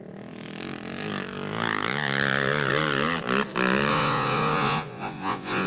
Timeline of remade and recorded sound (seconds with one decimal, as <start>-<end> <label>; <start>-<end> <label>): 0.0-3.9 recorded; 3.9-5.7 remade